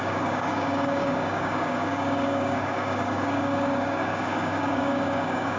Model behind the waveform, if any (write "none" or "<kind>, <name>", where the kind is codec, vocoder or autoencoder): codec, DAC